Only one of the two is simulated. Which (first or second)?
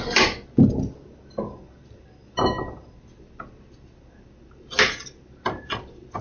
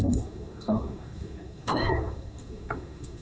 second